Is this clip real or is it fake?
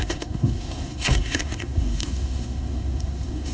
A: fake